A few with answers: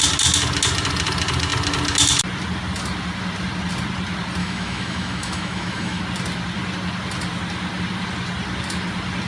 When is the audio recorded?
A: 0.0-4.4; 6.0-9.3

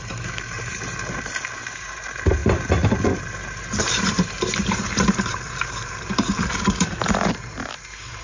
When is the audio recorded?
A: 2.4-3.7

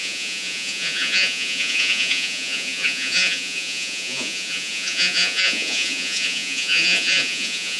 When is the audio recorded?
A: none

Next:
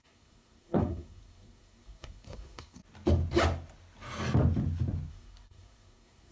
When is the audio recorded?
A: 2.8-5.1

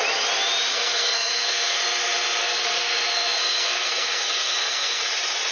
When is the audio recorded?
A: 0.0-0.7; 1.8-2.4; 5.1-5.5

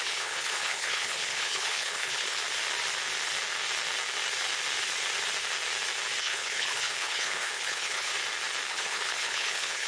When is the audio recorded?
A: 2.4-6.2; 8.1-8.7